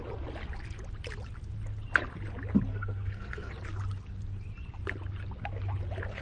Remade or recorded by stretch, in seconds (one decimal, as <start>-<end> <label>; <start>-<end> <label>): 0.0-2.7 recorded; 2.7-3.5 remade; 3.5-6.2 recorded

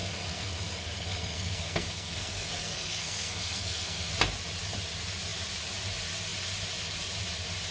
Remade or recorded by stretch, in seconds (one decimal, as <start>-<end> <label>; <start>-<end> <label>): 0.0-4.1 remade; 4.1-7.7 recorded

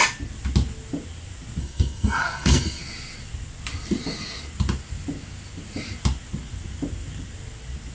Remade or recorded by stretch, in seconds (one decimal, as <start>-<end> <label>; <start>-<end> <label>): 0.0-1.6 recorded; 1.6-2.8 remade; 2.8-7.9 recorded

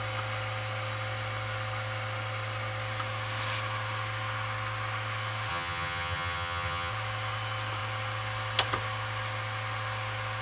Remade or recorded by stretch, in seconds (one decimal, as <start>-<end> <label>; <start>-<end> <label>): 0.0-5.5 recorded; 5.5-6.9 remade; 6.9-10.4 recorded